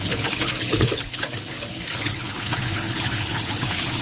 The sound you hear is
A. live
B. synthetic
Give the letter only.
B